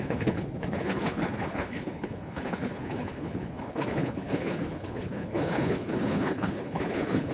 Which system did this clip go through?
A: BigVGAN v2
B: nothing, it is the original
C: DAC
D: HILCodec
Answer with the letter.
D